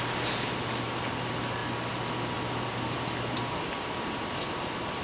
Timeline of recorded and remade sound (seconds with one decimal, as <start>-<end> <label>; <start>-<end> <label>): 0.0-5.0 recorded